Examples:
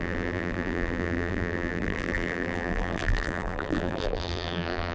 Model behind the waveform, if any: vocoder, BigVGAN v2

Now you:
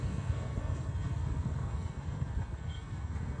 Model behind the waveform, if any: codec, SNAC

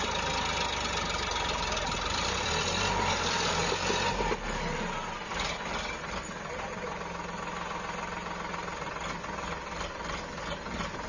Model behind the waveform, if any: none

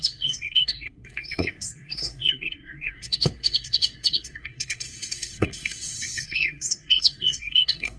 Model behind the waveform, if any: codec, SNAC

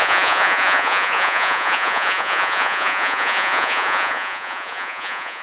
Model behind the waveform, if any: vocoder, Vocos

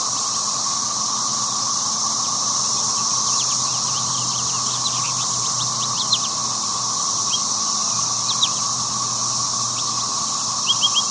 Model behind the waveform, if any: none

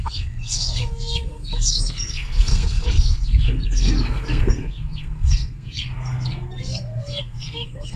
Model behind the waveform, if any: codec, SNAC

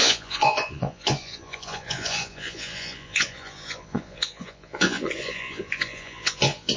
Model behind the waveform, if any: vocoder, Vocos